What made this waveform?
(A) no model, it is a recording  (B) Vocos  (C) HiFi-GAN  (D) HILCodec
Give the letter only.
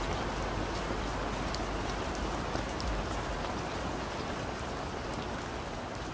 A